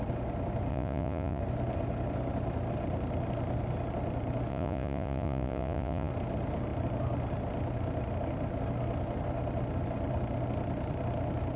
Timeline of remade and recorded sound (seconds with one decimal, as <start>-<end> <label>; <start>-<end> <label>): 0.0-0.7 recorded; 0.7-1.4 remade; 1.4-4.5 recorded; 4.5-6.1 remade; 6.1-11.6 recorded